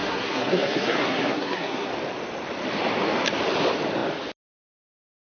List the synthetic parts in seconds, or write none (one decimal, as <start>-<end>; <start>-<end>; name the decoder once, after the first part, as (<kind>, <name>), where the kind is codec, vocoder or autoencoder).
0.0-1.9 (codec, SNAC)